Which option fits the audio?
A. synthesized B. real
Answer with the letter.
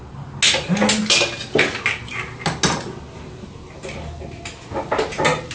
B